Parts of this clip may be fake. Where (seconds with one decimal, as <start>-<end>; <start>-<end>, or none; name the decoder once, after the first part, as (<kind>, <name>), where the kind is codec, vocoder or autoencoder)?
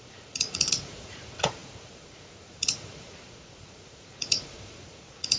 0.0-5.4 (vocoder, Vocos)